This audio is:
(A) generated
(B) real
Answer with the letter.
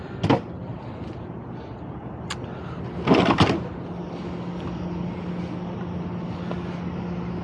B